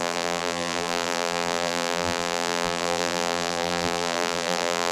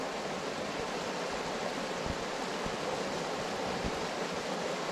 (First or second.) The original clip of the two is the second